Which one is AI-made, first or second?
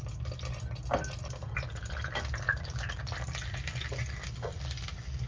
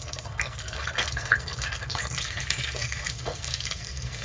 second